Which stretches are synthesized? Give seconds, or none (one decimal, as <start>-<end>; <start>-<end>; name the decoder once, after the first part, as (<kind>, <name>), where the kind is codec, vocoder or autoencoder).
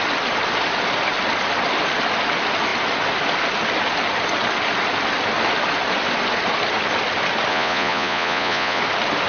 7.5-8.8 (vocoder, Vocos)